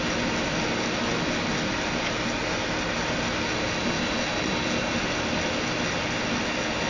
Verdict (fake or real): real